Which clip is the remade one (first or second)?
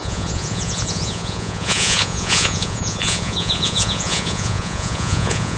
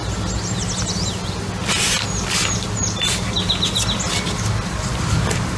first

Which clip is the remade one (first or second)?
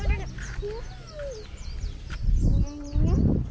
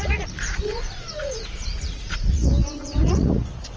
second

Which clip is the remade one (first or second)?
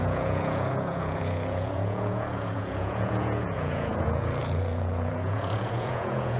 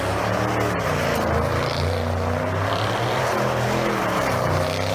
first